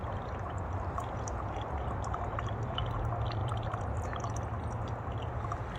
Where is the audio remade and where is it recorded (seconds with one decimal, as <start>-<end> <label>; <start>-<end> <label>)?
0.0-2.8 remade; 2.8-3.4 recorded; 3.4-4.0 remade; 4.0-5.8 recorded